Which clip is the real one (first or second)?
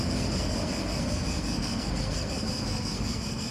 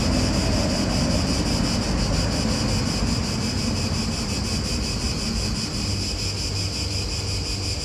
second